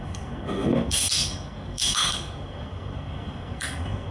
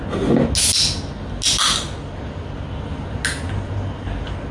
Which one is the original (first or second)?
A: second